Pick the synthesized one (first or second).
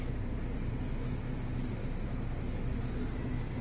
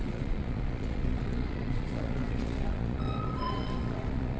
second